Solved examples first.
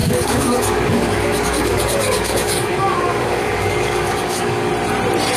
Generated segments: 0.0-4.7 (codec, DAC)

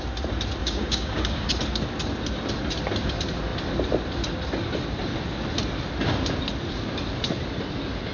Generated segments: 0.6-1.5 (codec, DAC)

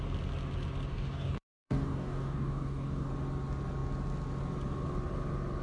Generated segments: 0.9-3.1 (codec, DAC)

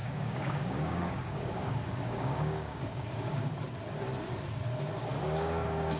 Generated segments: 0.0-3.6 (codec, DAC); 5.2-6.0